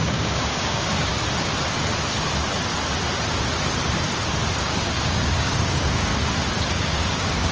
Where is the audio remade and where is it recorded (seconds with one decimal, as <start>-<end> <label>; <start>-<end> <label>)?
0.0-1.1 remade; 1.1-4.8 recorded; 4.8-6.1 remade; 6.1-6.7 recorded; 6.7-7.5 remade